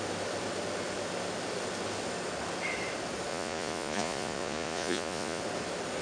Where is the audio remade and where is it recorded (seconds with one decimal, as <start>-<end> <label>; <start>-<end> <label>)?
0.0-3.3 recorded; 3.3-5.4 remade; 5.4-6.0 recorded